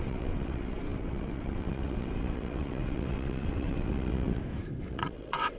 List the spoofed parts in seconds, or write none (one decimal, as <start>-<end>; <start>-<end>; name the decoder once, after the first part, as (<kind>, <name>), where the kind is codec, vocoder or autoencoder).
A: 0.0-4.4 (vocoder, WaveNeXt); 4.9-5.6